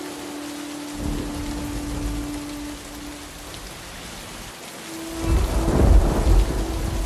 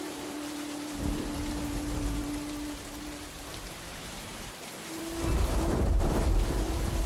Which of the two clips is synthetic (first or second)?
second